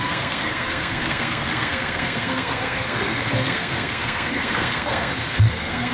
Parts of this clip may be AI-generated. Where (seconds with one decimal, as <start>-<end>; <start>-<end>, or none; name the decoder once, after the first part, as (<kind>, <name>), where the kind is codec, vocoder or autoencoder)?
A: 0.0-5.9 (codec, SNAC)